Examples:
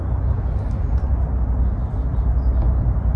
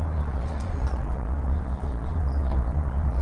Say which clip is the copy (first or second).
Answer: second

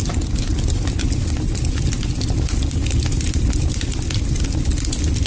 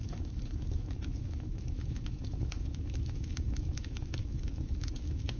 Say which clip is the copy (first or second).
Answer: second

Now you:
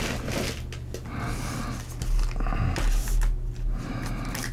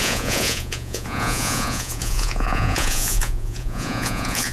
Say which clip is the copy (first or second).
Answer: second